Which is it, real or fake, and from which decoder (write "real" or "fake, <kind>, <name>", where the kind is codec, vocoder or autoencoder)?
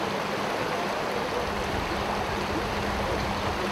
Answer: real